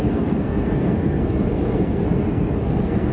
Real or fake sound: fake